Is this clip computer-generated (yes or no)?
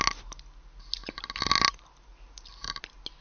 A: no